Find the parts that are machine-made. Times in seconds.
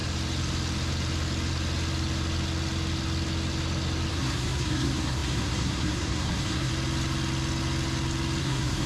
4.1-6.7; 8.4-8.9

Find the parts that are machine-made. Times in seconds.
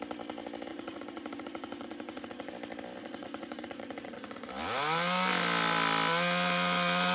0.7-2.5; 3.0-4.5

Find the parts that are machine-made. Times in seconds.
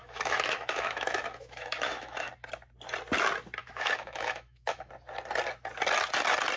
0.0-2.3; 3.6-4.9